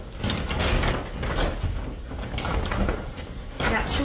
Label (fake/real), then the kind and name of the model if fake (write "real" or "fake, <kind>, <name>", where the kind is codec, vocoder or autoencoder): real